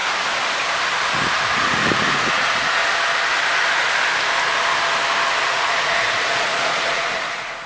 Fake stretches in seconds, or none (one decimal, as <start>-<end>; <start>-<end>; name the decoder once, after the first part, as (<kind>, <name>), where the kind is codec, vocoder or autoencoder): 1.6-2.8 (vocoder, Vocos); 5.4-7.7